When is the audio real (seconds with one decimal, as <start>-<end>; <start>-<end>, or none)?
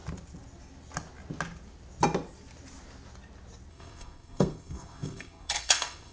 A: 0.0-3.7